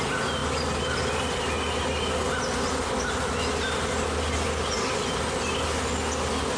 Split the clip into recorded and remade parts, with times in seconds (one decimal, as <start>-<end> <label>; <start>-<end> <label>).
0.0-6.6 recorded